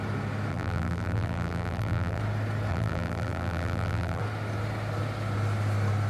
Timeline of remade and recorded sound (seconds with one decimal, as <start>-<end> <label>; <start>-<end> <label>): 0.0-0.5 recorded; 0.5-2.2 remade; 2.2-2.7 recorded; 2.7-4.2 remade; 4.2-6.1 recorded